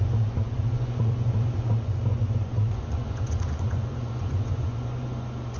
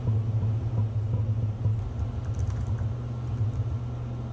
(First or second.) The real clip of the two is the second